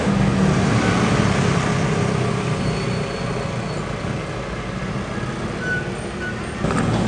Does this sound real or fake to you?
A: real